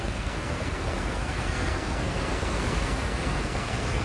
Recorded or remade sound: remade